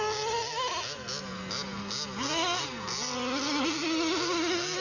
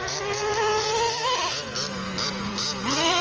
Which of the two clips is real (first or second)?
first